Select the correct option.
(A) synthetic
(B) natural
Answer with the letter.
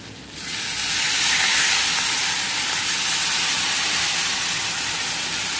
B